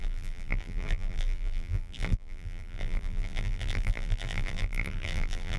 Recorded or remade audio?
remade